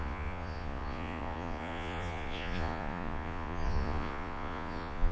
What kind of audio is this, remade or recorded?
remade